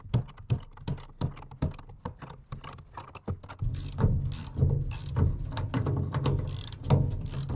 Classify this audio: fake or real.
real